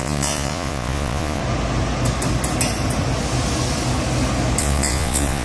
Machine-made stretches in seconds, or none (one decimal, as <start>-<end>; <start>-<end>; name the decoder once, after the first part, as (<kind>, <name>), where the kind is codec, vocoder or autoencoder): 0.0-1.4 (vocoder, Vocos); 4.6-5.4